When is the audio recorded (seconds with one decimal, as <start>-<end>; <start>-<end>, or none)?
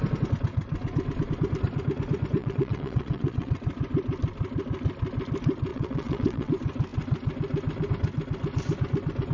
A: 0.0-2.4; 3.5-5.7; 6.5-9.3